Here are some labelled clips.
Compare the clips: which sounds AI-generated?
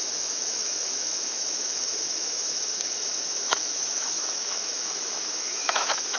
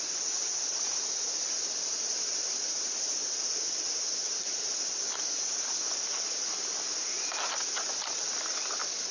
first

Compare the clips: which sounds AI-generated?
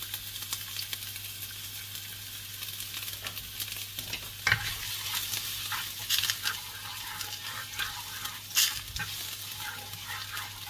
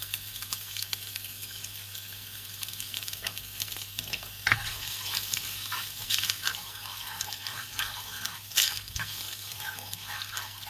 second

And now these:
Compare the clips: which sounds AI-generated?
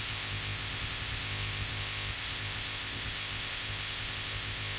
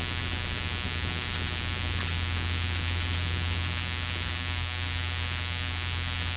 first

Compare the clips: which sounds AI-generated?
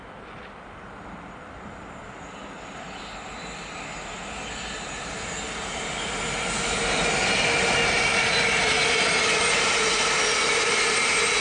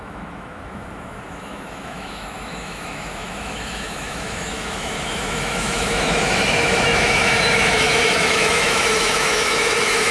second